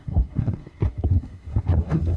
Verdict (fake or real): fake